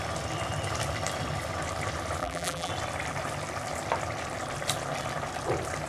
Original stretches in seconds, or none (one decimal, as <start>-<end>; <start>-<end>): 0.0-2.2; 2.7-5.9